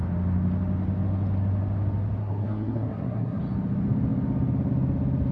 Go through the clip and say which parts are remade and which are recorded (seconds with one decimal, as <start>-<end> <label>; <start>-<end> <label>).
0.0-2.2 recorded; 2.2-3.4 remade; 3.4-5.3 recorded